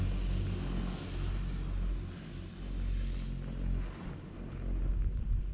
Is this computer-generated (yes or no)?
no